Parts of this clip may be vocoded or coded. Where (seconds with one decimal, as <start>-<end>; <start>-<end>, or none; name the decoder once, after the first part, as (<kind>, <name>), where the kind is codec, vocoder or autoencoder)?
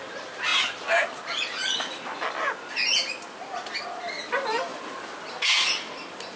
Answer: none